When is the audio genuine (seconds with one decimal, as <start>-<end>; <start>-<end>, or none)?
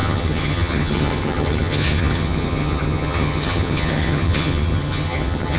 none